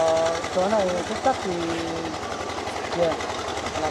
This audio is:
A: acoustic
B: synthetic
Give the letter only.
A